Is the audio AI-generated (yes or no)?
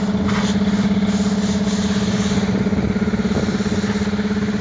no